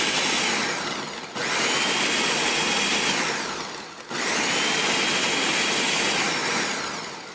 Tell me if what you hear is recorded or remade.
recorded